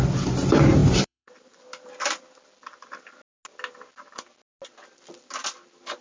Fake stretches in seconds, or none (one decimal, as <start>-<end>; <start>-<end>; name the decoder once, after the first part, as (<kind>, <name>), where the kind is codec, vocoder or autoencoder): 0.8-2.0 (vocoder, BigVGAN v2)